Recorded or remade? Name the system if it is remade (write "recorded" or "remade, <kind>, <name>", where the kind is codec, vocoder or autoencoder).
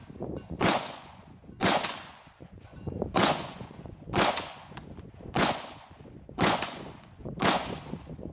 remade, vocoder, Vocos